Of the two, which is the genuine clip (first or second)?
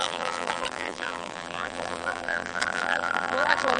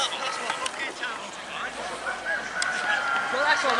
second